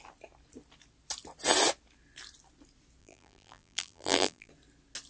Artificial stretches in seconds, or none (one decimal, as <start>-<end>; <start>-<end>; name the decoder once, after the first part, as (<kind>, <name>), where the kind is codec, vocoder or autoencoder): 3.0-4.5 (vocoder, BigVGAN v2)